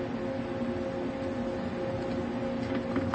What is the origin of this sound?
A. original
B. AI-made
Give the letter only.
A